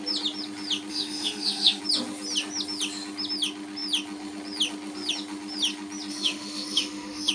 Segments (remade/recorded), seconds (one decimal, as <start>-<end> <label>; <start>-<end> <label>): 0.0-0.9 recorded; 0.9-1.8 remade; 1.8-6.1 recorded; 6.1-7.3 remade